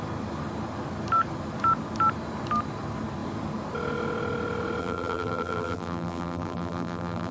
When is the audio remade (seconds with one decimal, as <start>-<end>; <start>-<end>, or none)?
4.8-7.3